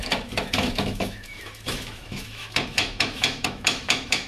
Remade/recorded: remade